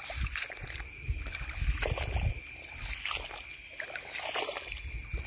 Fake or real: real